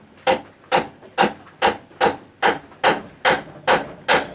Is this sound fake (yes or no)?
no